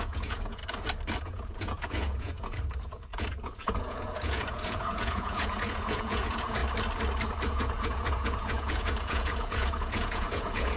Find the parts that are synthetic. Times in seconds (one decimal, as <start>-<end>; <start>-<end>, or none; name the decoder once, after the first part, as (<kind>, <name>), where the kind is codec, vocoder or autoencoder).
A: 0.0-0.6 (vocoder, Vocos); 1.2-6.6; 7.5-10.8